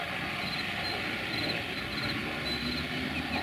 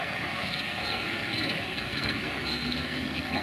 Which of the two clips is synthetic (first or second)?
second